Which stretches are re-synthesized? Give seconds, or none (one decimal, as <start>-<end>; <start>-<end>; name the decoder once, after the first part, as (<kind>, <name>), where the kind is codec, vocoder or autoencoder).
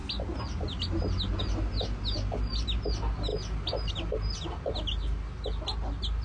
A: none